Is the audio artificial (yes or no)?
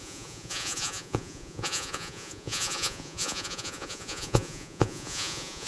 yes